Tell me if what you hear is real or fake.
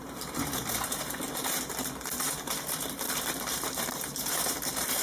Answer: fake